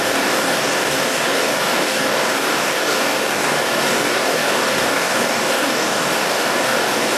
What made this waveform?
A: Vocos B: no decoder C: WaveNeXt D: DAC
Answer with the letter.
D